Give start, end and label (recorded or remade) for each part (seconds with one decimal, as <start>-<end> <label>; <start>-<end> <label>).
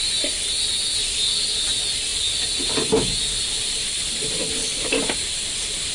0.0-4.6 recorded; 4.6-5.1 remade; 5.1-5.9 recorded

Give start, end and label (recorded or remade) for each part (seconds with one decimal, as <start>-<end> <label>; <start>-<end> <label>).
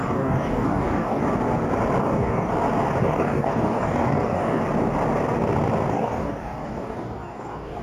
0.0-1.2 remade; 1.2-2.0 recorded; 2.0-2.5 remade; 2.5-3.0 recorded; 3.0-4.6 remade; 4.6-5.9 recorded; 5.9-7.8 remade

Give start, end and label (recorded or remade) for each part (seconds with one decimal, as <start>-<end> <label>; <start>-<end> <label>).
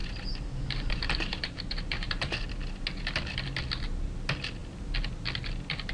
0.0-2.5 remade; 2.5-5.9 recorded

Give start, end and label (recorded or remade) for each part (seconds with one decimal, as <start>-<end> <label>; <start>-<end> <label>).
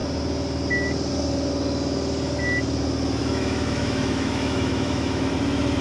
0.0-3.2 recorded; 3.2-5.3 remade; 5.3-5.8 recorded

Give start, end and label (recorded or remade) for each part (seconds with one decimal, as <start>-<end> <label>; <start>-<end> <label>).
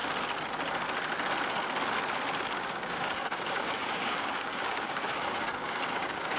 0.0-2.7 recorded; 2.7-6.4 remade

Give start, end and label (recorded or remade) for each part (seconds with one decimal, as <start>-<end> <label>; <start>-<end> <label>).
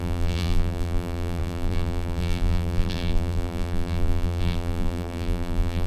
0.0-5.9 remade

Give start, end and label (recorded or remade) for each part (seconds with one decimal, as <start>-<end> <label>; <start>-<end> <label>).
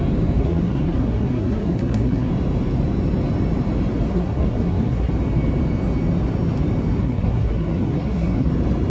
0.0-0.4 recorded; 0.4-2.3 remade; 2.3-4.1 recorded; 4.1-5.1 remade; 5.1-7.0 recorded; 7.0-8.5 remade; 8.5-8.9 recorded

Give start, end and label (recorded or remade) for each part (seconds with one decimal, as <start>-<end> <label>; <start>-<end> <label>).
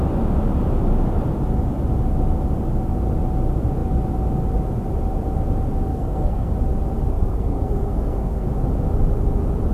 0.0-5.9 recorded; 5.9-6.5 remade; 6.5-7.1 recorded; 7.1-8.5 remade; 8.5-9.7 recorded